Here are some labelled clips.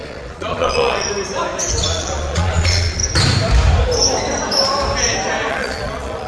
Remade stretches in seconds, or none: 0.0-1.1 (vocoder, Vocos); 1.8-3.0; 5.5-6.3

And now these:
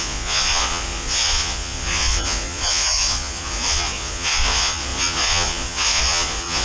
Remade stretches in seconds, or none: 0.0-6.6 (vocoder, Vocos)

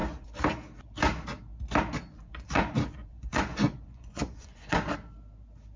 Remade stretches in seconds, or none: 2.1-4.9 (vocoder, Vocos)